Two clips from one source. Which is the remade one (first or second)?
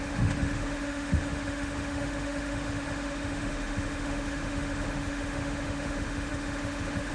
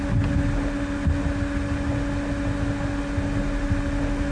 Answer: first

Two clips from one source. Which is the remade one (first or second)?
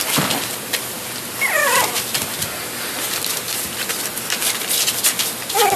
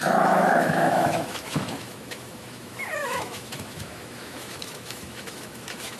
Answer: second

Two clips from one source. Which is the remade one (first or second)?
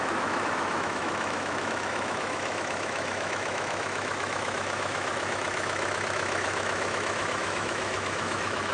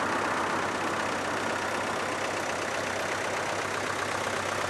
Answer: first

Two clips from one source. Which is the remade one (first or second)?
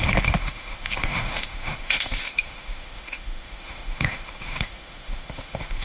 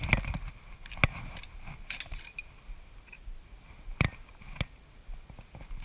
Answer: first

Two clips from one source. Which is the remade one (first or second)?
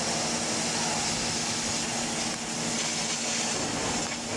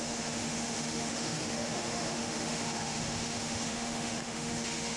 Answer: second